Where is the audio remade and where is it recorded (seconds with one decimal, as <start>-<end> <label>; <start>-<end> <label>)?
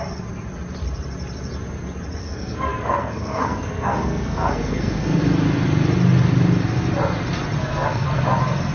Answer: 0.0-2.2 recorded; 2.2-5.2 remade; 5.2-7.6 recorded; 7.6-8.2 remade; 8.2-8.7 recorded